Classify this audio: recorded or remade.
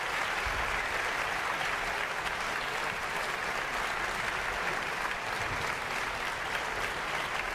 recorded